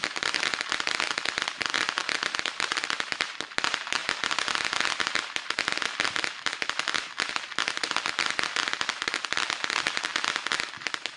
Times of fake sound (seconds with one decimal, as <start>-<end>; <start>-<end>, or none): 0.0-4.0; 7.3-10.1; 10.7-11.2